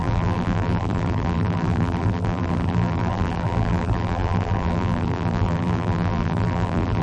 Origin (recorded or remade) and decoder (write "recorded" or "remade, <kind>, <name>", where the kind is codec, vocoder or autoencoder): remade, vocoder, BigVGAN v2